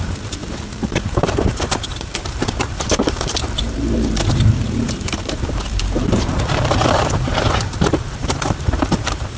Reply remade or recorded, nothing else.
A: remade